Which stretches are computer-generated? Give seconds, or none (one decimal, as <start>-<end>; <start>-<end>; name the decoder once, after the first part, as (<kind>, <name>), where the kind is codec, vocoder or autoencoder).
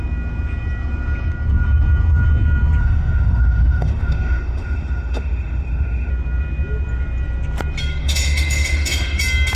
2.8-6.1 (autoencoder, DAC-VAE); 8.0-9.2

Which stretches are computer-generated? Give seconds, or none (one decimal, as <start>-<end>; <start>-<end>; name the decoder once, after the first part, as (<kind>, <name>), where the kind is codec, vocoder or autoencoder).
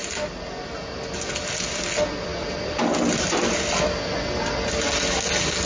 none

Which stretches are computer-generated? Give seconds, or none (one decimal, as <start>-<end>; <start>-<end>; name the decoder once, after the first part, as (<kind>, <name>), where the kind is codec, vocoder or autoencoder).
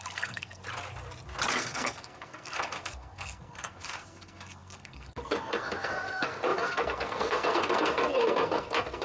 0.0-0.6 (codec, SNAC); 1.5-9.0